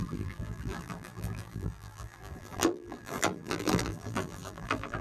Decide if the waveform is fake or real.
fake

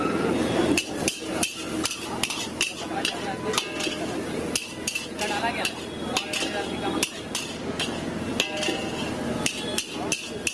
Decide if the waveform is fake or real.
real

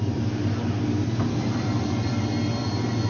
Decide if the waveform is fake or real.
fake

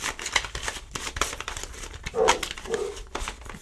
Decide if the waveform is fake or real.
fake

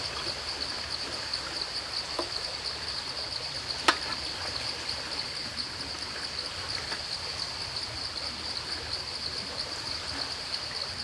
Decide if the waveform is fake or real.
real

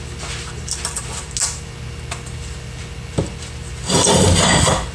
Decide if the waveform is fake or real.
real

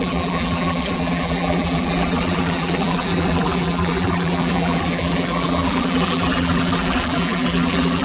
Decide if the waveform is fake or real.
fake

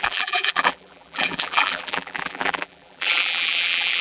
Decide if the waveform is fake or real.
fake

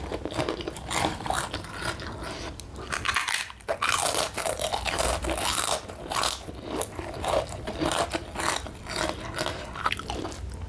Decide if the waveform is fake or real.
real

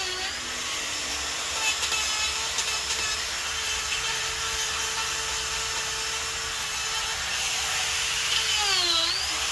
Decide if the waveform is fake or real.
real